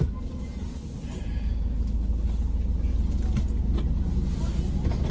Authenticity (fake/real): real